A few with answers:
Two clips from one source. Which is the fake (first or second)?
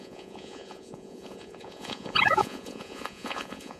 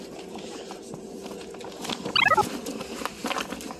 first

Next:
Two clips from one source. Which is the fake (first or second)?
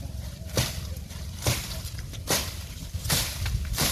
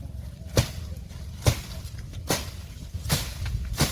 first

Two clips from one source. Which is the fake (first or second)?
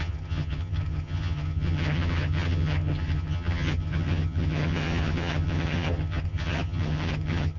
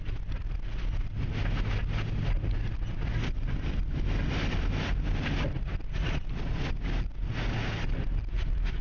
first